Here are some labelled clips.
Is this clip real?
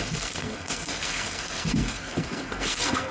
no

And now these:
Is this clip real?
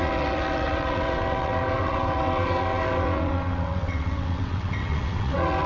no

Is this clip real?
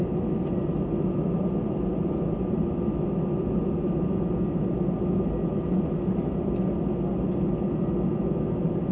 yes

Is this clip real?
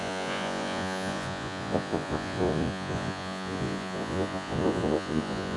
no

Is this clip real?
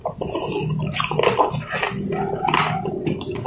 yes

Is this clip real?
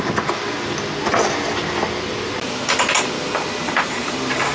yes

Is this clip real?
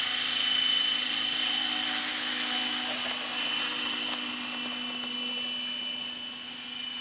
yes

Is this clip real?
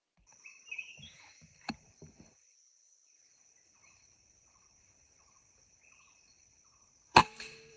no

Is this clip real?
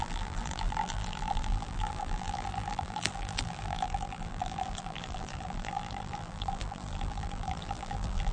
no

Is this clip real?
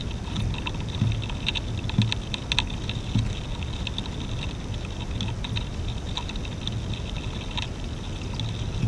yes